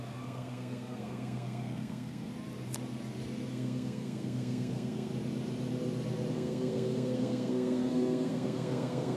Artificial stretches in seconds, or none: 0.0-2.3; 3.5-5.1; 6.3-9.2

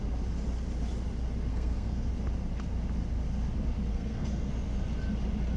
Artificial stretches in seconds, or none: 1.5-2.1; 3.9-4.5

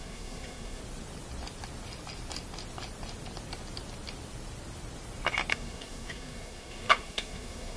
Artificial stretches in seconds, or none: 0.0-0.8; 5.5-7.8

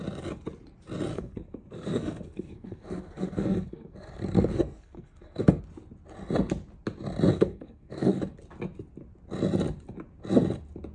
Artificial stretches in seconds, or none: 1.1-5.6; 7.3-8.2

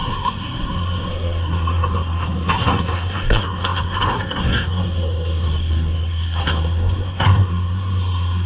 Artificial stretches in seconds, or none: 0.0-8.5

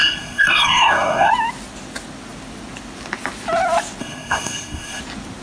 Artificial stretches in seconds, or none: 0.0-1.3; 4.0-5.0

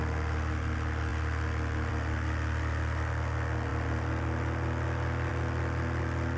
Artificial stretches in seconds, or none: none

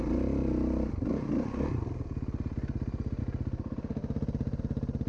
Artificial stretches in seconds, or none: none